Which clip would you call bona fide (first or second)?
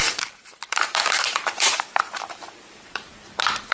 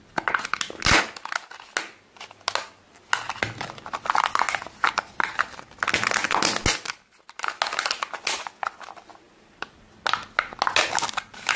second